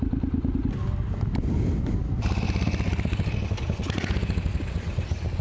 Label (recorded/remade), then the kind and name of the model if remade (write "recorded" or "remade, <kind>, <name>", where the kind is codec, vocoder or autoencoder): recorded